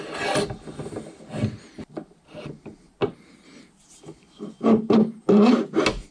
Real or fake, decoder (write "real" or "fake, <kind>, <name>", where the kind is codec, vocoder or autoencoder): real